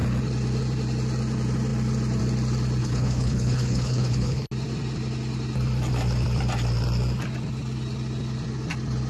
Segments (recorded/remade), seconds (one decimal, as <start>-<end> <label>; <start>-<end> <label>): 0.0-2.8 recorded; 2.8-4.5 remade; 4.5-9.1 recorded